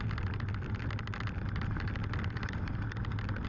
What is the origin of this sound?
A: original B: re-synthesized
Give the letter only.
A